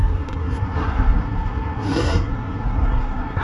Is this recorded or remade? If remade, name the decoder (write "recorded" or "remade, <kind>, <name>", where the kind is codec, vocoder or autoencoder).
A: remade, codec, SNAC